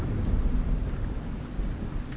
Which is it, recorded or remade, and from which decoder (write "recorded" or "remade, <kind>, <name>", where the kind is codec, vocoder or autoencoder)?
recorded